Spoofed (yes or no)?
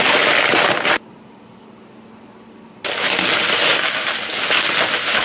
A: no